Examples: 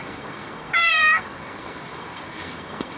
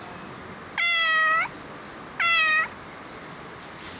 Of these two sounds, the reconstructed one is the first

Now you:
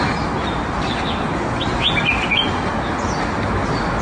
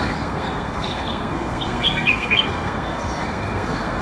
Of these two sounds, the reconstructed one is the second